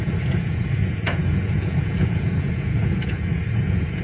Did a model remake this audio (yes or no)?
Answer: yes